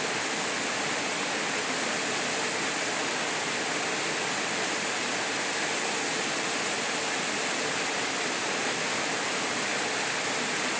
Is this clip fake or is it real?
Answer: real